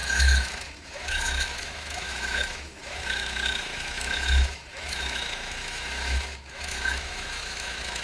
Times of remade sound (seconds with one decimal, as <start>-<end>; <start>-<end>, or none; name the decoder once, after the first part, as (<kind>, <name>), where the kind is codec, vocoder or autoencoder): 0.0-8.0 (autoencoder, DAC-VAE)